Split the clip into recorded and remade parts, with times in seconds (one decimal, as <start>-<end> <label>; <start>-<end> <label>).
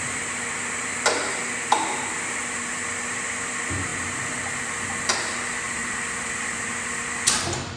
0.0-7.8 recorded